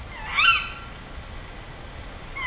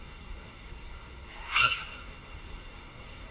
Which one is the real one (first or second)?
first